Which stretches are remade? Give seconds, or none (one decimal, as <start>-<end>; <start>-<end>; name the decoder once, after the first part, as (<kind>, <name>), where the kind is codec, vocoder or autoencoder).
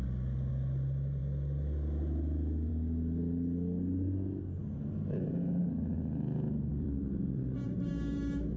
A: 6.7-7.9 (vocoder, BigVGAN v2)